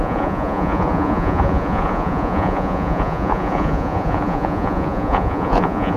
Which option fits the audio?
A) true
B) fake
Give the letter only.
B